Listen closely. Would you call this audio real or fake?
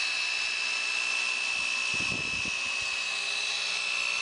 real